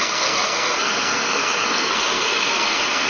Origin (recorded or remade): remade